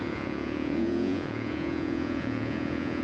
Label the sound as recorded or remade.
remade